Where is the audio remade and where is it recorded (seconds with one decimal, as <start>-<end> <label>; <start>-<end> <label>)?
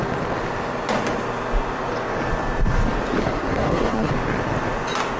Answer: 0.0-3.2 recorded; 3.2-4.1 remade; 4.1-5.2 recorded